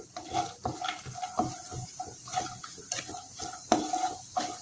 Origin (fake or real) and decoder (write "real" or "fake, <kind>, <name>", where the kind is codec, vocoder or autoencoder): real